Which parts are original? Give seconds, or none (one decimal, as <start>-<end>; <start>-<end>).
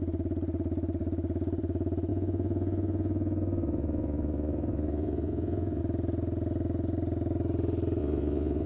0.0-2.1; 5.8-8.0